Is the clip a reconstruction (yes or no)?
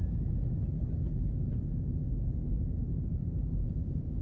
yes